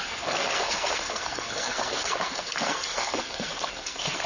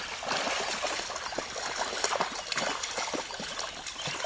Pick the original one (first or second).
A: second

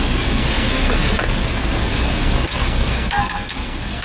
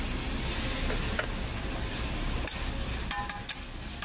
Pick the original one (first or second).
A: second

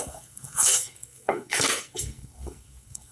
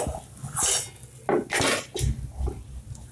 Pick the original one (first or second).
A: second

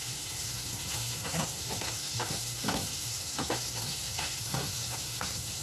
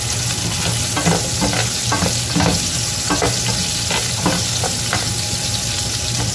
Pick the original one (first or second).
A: second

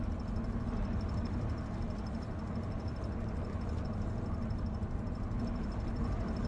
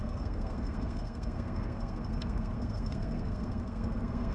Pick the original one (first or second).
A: first